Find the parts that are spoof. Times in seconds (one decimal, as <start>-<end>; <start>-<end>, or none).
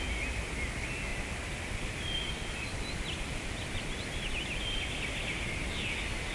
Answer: 1.1-4.9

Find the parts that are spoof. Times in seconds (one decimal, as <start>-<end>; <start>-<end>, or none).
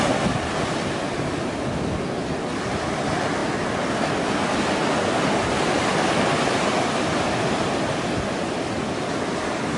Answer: none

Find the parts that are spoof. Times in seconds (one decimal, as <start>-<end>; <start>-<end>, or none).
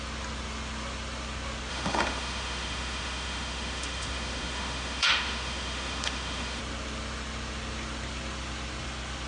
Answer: 1.7-6.6